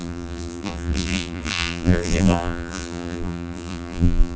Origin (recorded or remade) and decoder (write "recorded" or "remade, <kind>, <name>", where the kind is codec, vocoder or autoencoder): remade, vocoder, BigVGAN v2